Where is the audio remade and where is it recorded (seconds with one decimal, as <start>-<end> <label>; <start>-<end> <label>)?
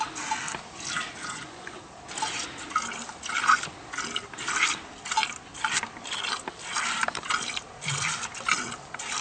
0.0-1.2 recorded; 1.2-1.8 remade; 1.8-9.2 recorded